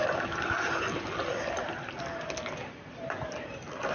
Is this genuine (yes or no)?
yes